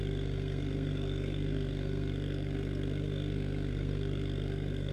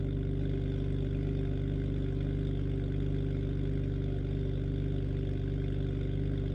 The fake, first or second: first